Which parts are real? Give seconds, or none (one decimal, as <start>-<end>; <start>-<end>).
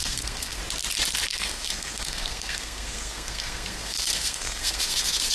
0.6-1.3